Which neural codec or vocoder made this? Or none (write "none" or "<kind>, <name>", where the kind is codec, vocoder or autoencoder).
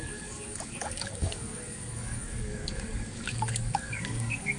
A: codec, DAC